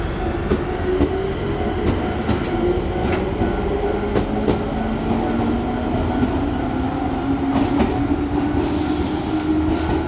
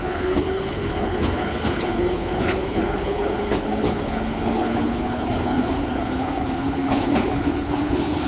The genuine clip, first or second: first